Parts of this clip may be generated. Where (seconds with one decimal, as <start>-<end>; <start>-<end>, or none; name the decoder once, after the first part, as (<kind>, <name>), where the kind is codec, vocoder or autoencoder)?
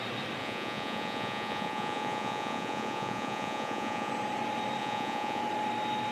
0.4-4.1 (vocoder, Vocos); 4.8-5.4